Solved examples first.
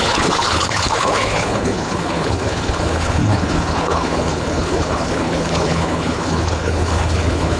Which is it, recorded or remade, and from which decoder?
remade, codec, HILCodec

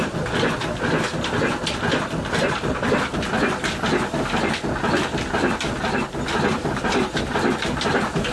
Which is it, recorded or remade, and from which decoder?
recorded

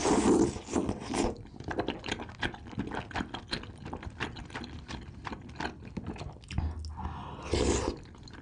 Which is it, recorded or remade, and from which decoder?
recorded